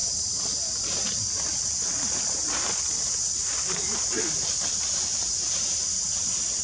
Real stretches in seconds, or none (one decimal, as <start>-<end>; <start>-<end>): 0.0-6.6